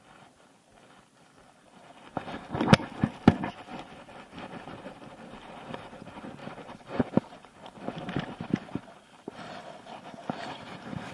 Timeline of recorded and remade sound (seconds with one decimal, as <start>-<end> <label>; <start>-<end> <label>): 0.0-11.1 recorded